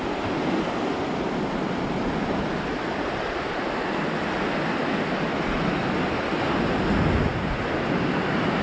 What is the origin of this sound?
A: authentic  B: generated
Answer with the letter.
A